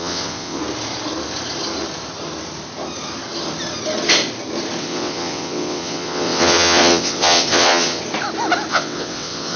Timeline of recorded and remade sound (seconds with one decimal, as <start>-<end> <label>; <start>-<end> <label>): 0.0-0.6 remade; 0.6-4.8 recorded; 4.8-8.0 remade; 8.0-8.7 recorded; 8.7-9.6 remade